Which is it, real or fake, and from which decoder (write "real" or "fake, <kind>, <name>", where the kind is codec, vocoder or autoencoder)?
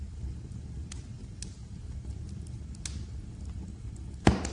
real